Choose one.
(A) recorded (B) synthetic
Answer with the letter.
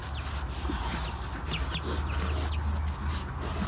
A